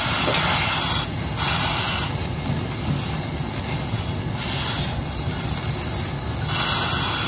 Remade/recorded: recorded